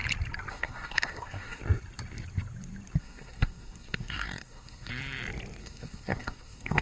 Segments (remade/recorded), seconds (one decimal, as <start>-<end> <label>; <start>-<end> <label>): 0.0-0.5 recorded; 0.5-1.6 remade; 1.6-3.0 recorded; 3.0-4.9 remade; 4.9-5.6 recorded; 5.6-6.8 remade